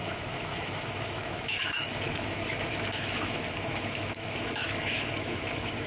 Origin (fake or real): fake